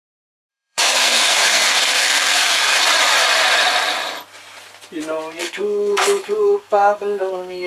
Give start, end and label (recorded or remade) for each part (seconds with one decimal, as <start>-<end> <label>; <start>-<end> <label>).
0.0-0.5 recorded; 0.5-2.8 remade; 2.8-5.4 recorded; 5.4-7.7 remade

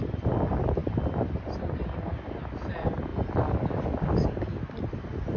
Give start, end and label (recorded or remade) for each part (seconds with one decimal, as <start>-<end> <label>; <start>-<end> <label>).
0.0-5.4 recorded

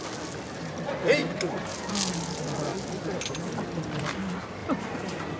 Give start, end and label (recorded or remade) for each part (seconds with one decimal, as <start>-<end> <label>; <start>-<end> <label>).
0.0-1.2 recorded; 1.2-1.7 remade; 1.7-4.6 recorded; 4.6-5.4 remade

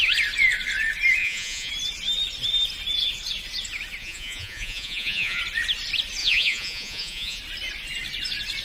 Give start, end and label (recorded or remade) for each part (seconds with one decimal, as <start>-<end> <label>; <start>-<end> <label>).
0.0-1.2 recorded; 1.2-1.7 remade; 1.7-4.0 recorded; 4.0-5.4 remade; 5.4-6.2 recorded; 6.2-7.4 remade; 7.4-8.6 recorded

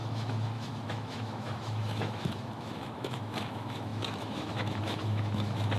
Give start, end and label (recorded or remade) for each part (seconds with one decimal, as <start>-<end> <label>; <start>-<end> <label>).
0.0-5.8 remade

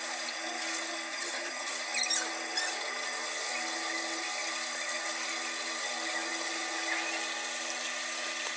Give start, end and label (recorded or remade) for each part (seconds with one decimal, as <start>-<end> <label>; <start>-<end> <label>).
0.0-1.1 recorded; 1.1-1.7 remade; 1.7-8.6 recorded

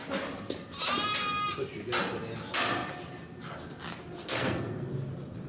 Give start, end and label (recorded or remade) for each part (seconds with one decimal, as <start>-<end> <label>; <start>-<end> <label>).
0.0-4.2 recorded; 4.2-5.1 remade; 5.1-5.5 recorded